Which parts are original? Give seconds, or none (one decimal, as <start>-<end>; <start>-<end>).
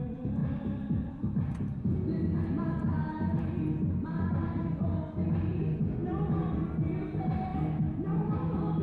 0.0-8.8